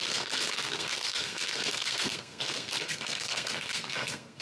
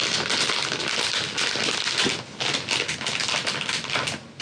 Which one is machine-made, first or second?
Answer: first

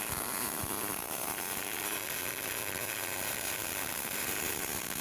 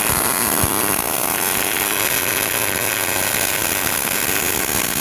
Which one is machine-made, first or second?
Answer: first